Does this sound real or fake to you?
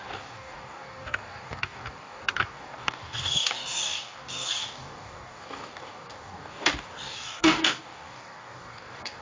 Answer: fake